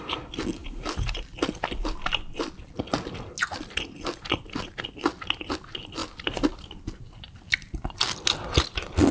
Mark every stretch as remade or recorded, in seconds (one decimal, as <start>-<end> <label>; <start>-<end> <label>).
0.0-9.1 recorded